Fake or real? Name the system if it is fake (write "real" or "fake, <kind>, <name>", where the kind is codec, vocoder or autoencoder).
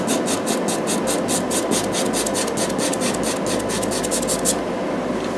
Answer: real